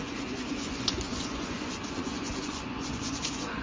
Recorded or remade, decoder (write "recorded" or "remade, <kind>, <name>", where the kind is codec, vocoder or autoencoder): remade, vocoder, Vocos